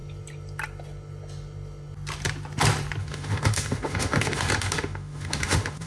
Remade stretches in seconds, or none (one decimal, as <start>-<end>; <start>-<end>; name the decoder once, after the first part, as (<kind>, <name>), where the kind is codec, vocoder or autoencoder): 3.0-5.9 (autoencoder, DAC-VAE)